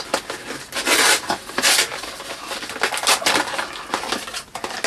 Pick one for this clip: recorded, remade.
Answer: recorded